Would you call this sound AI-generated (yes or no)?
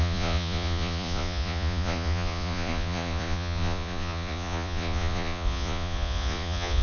yes